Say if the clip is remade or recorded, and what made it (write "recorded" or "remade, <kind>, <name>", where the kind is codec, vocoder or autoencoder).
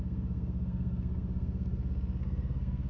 remade, codec, SNAC